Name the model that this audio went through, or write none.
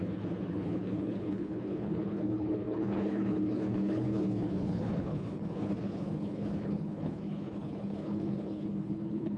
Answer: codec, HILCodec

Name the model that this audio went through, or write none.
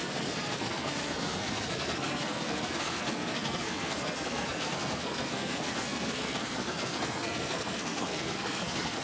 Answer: codec, SNAC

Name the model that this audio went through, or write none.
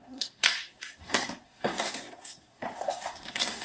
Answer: codec, SNAC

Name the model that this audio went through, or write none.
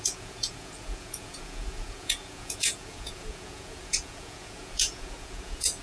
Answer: vocoder, Vocos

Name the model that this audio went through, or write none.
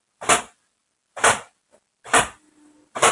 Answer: none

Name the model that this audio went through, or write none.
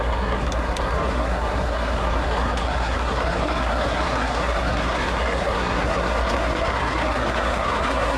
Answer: codec, SNAC